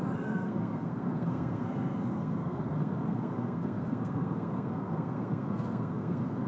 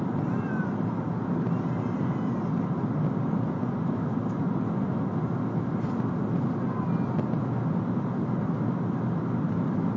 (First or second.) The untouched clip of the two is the second